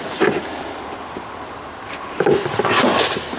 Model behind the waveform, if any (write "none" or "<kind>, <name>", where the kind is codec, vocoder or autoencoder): none